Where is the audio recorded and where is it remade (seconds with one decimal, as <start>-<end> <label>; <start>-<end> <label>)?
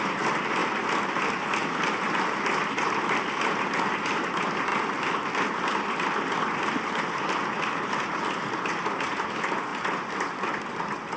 0.0-11.2 recorded